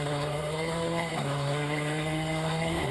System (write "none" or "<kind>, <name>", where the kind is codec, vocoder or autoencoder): codec, SNAC